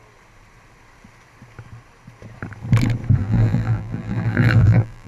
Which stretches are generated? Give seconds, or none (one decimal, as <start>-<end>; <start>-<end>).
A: 3.2-5.1